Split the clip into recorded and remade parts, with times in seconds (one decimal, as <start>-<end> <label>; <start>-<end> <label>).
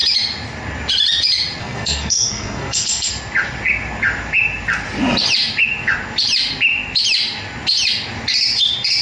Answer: 0.0-1.6 recorded; 1.6-3.1 remade; 3.1-9.0 recorded